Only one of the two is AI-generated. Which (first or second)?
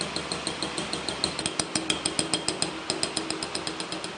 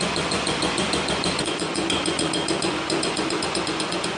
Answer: second